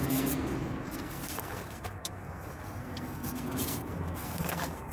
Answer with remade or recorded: remade